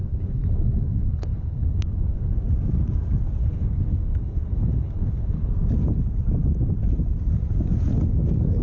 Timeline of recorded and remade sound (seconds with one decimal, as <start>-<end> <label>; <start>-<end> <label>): 0.0-2.4 remade; 2.4-3.4 recorded; 3.4-5.5 remade; 5.5-8.6 recorded